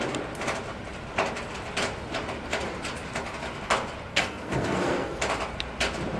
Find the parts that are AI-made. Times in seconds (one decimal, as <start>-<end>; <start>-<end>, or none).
4.1-5.2